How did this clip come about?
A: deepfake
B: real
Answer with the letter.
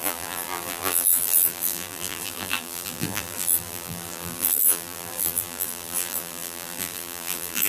A